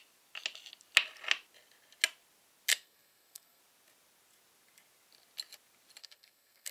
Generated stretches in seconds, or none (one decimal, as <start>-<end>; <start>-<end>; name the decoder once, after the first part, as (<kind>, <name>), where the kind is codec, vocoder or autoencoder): 2.7-3.6 (codec, SNAC); 6.0-6.7